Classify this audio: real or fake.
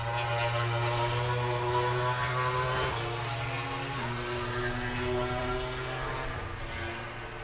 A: real